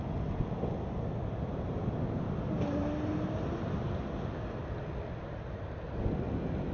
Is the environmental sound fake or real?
real